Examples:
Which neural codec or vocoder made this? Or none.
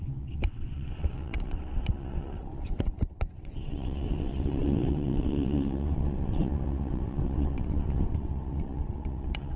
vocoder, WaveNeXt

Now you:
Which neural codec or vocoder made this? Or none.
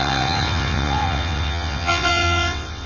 vocoder, WaveNeXt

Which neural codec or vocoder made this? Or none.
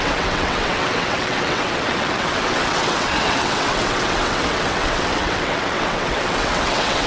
vocoder, WaveNeXt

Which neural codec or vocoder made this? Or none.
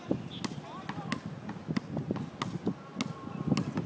none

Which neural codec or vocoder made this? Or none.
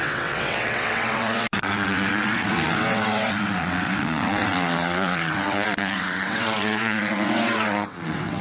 vocoder, WaveNeXt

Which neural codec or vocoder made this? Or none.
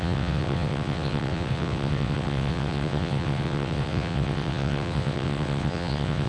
vocoder, WaveNeXt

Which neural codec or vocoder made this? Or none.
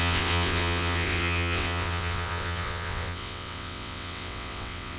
vocoder, WaveNeXt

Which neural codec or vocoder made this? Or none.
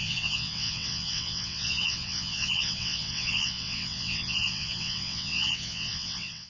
vocoder, WaveNeXt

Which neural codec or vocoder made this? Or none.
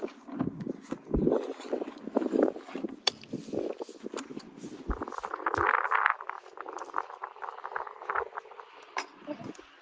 none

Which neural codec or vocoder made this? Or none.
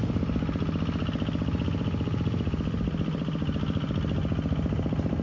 none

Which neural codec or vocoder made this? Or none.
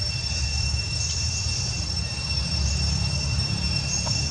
none